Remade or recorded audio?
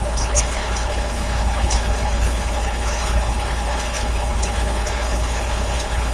remade